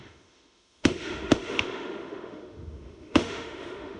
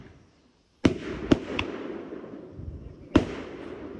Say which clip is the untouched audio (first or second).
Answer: second